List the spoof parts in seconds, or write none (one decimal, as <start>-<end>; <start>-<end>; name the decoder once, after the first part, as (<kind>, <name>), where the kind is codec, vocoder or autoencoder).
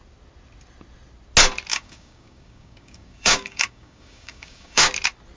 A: 1.7-4.9 (codec, DAC)